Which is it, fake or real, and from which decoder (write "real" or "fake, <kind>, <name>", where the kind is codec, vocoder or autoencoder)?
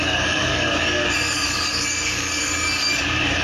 fake, codec, DAC